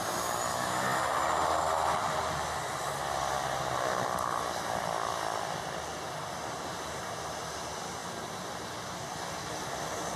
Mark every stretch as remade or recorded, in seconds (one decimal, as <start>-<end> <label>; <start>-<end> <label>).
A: 0.0-10.2 recorded